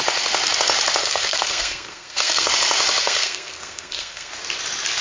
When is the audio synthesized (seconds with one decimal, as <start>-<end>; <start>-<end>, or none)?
1.0-2.5; 3.0-4.3